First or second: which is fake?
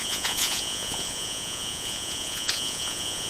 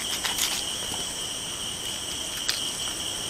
first